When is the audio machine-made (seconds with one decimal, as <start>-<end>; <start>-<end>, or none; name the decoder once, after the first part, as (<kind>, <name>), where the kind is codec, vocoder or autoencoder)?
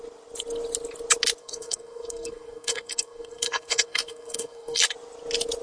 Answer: 1.4-4.8 (codec, SNAC)